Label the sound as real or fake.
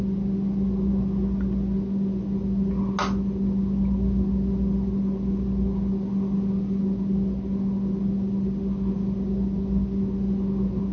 real